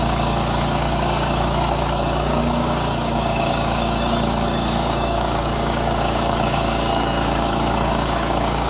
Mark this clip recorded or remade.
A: remade